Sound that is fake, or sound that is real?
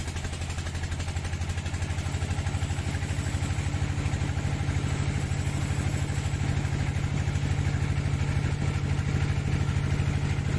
real